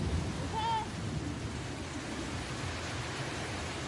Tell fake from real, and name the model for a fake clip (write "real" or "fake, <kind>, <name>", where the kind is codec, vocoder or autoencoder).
real